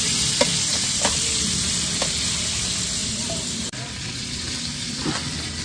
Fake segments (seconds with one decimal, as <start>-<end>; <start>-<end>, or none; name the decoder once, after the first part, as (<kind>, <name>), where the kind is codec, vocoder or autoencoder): 0.7-1.2 (vocoder, BigVGAN v2); 3.0-5.0